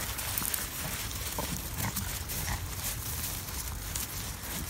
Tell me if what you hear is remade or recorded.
recorded